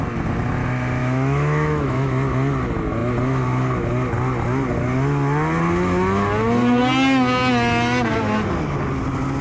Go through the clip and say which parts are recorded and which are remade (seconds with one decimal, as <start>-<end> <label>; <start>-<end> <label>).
0.0-1.0 recorded; 1.0-2.1 remade; 2.1-9.4 recorded

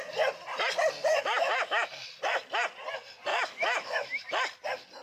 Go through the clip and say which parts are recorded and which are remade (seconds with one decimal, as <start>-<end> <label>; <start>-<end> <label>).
0.0-1.1 recorded; 1.1-1.9 remade; 1.9-3.3 recorded; 3.3-4.3 remade; 4.3-5.0 recorded